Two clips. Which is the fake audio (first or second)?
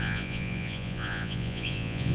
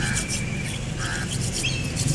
first